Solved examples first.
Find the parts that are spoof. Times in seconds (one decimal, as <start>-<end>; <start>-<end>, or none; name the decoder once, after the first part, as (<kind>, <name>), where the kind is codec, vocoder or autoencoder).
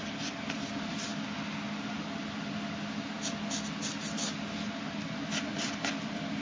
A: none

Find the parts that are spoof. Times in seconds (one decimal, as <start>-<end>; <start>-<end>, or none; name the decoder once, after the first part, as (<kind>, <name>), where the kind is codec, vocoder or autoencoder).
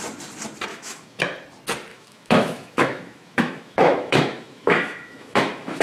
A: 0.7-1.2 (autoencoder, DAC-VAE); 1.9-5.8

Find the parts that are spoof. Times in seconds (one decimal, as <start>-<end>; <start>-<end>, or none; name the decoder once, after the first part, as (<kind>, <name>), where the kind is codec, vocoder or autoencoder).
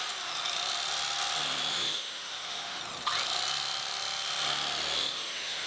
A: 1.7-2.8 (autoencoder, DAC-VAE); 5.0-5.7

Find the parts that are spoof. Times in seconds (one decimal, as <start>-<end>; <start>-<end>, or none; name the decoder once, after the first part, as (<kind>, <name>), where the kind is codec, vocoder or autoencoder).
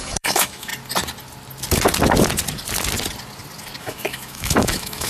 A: 0.0-0.7 (autoencoder, DAC-VAE); 3.8-5.1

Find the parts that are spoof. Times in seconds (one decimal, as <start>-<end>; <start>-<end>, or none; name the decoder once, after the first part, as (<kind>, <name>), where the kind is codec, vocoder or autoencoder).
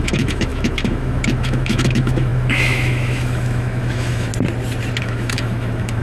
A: 0.0-4.3 (autoencoder, DAC-VAE); 5.0-6.0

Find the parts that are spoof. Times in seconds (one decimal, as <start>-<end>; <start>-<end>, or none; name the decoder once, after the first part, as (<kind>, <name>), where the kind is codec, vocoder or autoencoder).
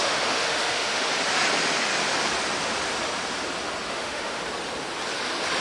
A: 0.0-1.1 (autoencoder, DAC-VAE); 3.9-4.4